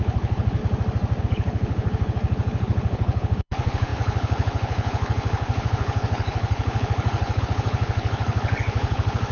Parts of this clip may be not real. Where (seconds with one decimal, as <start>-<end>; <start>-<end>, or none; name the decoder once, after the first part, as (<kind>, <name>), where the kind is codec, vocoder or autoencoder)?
0.0-0.6 (codec, HILCodec); 1.2-9.3